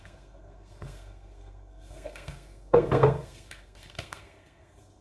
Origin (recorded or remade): remade